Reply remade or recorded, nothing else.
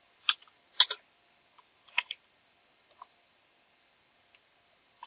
recorded